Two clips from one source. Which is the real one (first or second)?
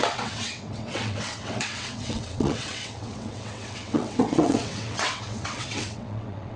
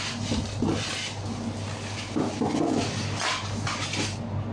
second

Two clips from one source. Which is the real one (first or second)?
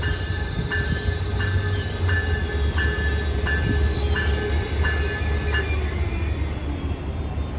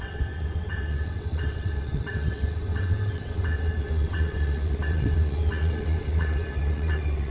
first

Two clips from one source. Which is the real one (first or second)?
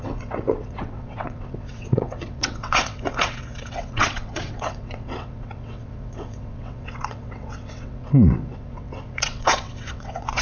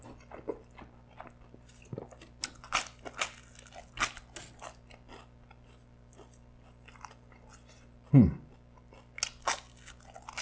second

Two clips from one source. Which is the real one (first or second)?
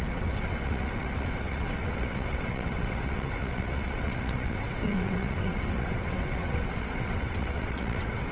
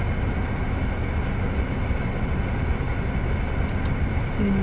second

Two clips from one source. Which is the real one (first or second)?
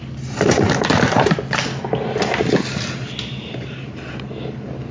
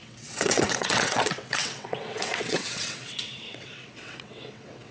first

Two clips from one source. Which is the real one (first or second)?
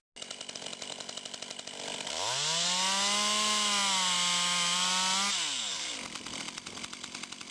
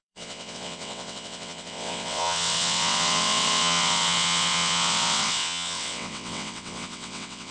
first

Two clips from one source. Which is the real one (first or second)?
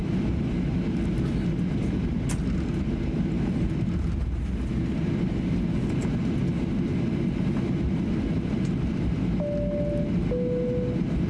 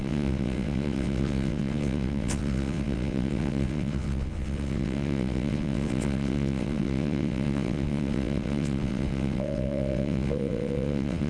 first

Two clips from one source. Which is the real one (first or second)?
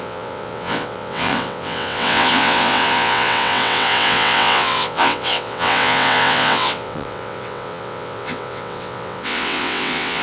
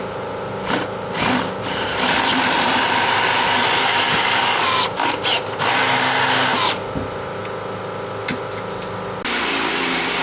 second